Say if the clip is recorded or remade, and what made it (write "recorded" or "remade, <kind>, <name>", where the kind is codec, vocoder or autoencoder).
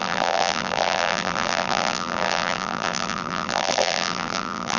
remade, vocoder, BigVGAN v2